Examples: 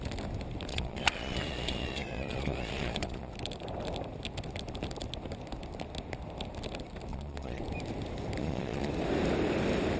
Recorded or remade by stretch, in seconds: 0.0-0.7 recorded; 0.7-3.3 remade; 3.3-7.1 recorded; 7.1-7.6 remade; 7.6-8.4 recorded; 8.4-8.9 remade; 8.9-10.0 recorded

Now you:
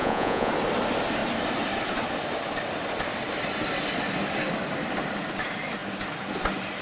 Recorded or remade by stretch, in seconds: 0.0-0.5 remade; 0.5-6.8 recorded

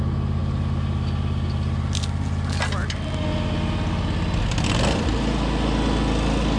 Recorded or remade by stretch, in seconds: 0.0-6.6 recorded